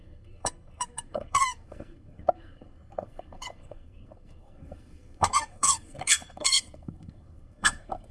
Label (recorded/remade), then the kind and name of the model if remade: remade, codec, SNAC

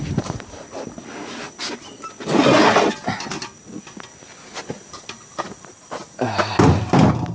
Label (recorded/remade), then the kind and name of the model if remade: recorded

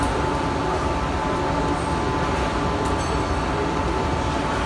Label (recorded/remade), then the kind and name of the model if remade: recorded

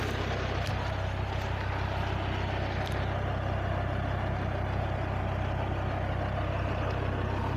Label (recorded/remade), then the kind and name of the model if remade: recorded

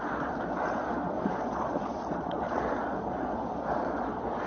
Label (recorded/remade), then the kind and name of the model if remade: remade, vocoder, Vocos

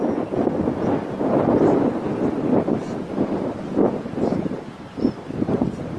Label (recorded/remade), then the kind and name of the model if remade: recorded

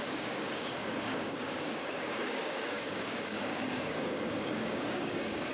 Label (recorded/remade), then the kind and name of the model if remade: remade, codec, DAC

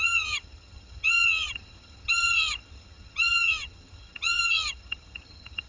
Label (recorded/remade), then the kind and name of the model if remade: remade, vocoder, HiFi-GAN